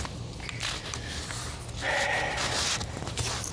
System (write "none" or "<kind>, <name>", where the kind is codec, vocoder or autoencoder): none